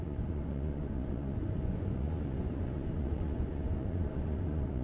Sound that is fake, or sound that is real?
fake